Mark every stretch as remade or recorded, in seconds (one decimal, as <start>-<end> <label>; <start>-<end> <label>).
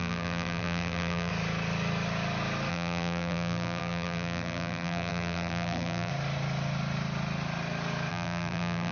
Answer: 0.0-1.3 remade; 1.3-2.7 recorded; 2.7-6.1 remade; 6.1-8.1 recorded; 8.1-8.9 remade